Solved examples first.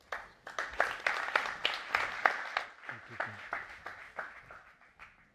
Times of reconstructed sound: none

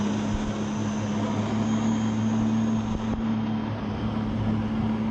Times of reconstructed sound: none

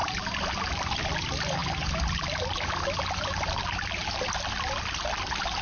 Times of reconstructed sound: none

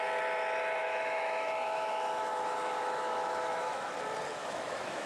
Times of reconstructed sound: 0.8-3.9 (autoencoder, DAC-VAE); 4.4-5.1

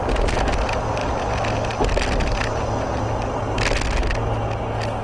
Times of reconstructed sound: none

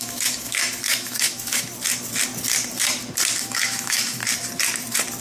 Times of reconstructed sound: 0.0-1.7 (autoencoder, DAC-VAE); 3.4-4.2

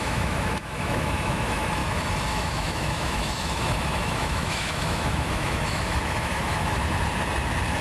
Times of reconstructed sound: 0.0-1.8 (autoencoder, DAC-VAE); 2.3-6.8

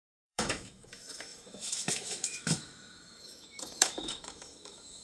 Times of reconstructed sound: 0.0-5.0 (autoencoder, DAC-VAE)